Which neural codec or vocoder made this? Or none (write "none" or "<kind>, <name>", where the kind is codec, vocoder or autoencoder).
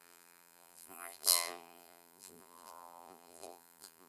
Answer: vocoder, BigVGAN v2